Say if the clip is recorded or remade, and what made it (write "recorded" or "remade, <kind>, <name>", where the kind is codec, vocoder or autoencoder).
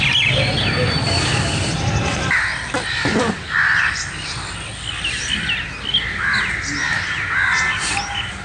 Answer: recorded